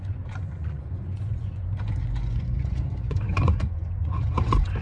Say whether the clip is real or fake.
fake